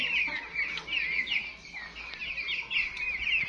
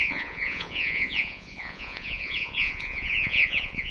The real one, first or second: first